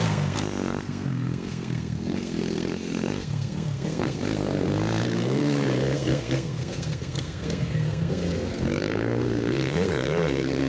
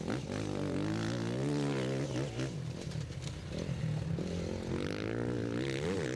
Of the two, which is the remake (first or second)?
first